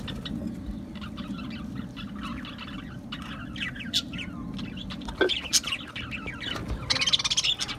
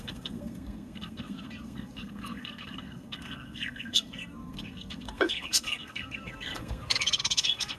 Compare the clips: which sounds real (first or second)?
first